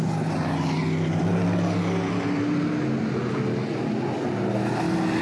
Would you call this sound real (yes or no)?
yes